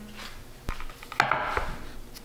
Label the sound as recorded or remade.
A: recorded